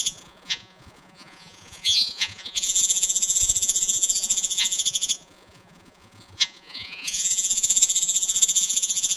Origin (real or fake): fake